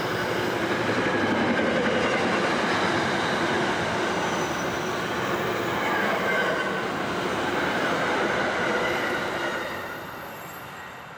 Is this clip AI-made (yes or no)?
no